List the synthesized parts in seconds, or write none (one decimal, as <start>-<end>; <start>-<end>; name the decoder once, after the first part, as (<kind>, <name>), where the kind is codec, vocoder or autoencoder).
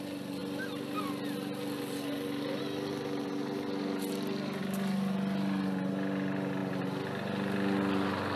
none